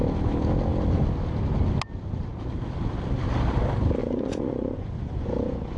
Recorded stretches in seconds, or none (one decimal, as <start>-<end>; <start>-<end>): 0.0-4.0